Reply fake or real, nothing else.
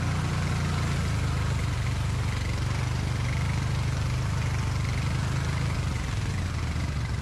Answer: real